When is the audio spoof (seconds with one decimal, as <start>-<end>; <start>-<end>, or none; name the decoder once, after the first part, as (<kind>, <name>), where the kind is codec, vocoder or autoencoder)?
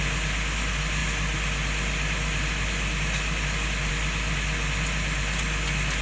none